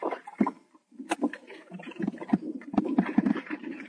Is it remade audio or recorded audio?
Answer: remade